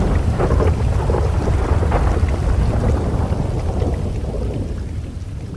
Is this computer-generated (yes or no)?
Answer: no